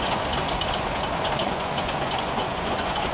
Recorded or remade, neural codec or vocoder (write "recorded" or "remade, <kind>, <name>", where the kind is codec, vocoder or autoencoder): remade, vocoder, Vocos